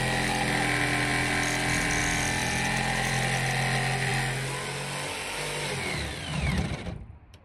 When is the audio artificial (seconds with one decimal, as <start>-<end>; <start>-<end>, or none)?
2.4-3.1; 6.3-7.4